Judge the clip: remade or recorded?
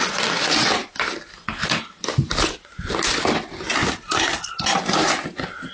recorded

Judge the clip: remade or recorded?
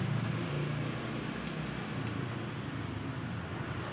recorded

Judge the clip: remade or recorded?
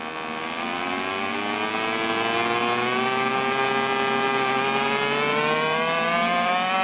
recorded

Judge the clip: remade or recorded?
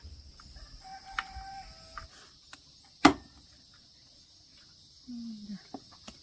recorded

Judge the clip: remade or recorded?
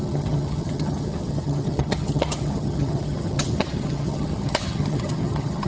remade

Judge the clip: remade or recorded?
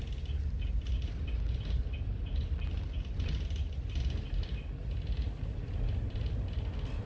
recorded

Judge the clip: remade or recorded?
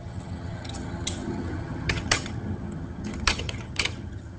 remade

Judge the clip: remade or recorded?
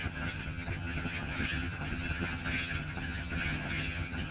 remade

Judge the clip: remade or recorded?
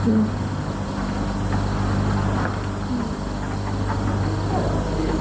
recorded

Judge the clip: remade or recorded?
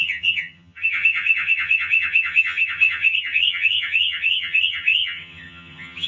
remade